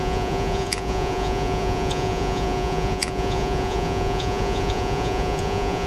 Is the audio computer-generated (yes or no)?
yes